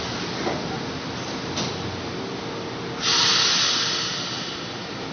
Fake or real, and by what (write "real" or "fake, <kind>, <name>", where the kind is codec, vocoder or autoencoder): real